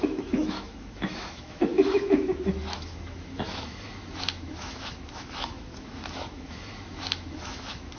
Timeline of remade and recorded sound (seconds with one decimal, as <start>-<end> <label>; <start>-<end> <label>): 0.0-8.0 remade